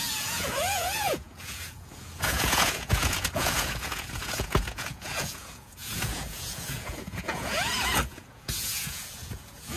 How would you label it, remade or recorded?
remade